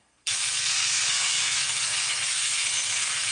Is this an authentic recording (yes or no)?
no